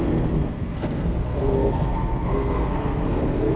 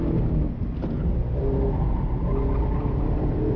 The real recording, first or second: second